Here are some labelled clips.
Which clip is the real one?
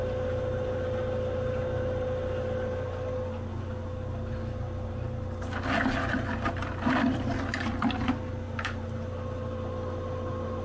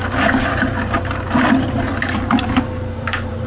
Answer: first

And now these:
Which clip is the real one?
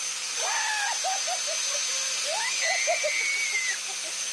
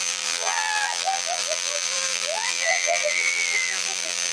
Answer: first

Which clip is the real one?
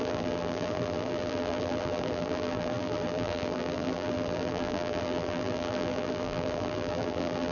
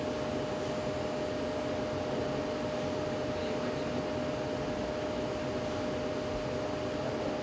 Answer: second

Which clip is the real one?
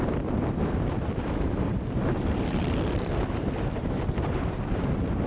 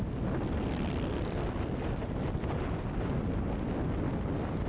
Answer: second